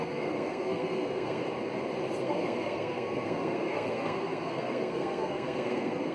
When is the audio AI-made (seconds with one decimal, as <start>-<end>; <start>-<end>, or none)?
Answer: 0.0-1.4; 2.2-6.1